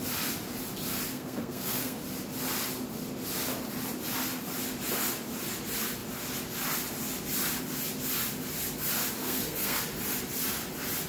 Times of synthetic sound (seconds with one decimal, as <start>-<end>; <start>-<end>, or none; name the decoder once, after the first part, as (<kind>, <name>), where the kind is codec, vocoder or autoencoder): 1.1-2.0 (codec, SNAC); 9.2-9.8